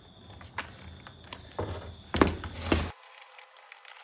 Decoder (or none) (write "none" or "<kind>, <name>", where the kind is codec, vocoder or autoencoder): none